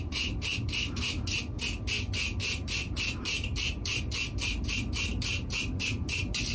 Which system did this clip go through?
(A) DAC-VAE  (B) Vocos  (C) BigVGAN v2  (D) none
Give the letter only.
D